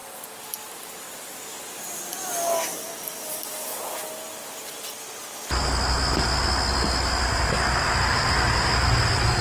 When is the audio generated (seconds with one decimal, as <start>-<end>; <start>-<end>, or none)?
0.0-1.6